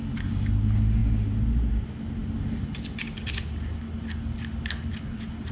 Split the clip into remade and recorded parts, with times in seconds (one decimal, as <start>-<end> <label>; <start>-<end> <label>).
0.0-5.5 recorded